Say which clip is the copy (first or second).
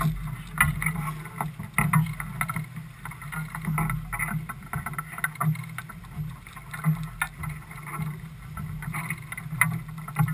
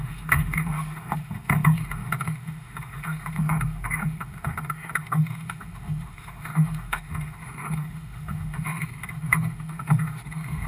second